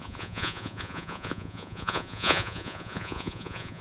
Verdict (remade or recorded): remade